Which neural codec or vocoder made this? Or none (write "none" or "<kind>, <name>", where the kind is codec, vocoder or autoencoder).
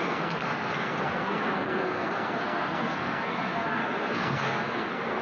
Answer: codec, SNAC